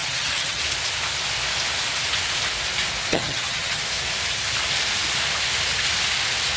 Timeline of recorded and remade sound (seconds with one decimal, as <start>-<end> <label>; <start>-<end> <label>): 0.0-0.6 remade; 0.6-3.1 recorded; 3.1-3.8 remade; 3.8-6.6 recorded